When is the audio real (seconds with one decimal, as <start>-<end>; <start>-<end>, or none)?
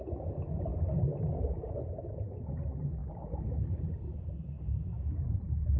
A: 0.0-3.0